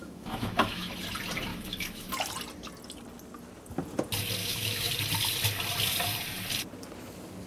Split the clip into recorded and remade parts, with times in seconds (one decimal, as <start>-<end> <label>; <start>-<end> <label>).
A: 0.0-0.9 remade; 0.9-1.5 recorded; 1.5-2.1 remade; 2.1-4.4 recorded; 4.4-4.9 remade; 4.9-7.5 recorded